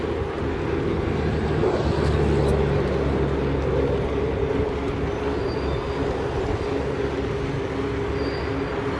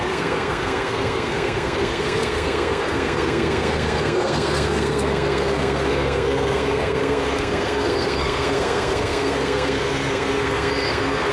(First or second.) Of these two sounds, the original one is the first